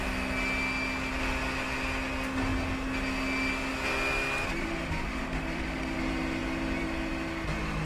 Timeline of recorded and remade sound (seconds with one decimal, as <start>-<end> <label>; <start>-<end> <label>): 0.0-4.6 recorded; 4.6-6.0 remade; 6.0-7.9 recorded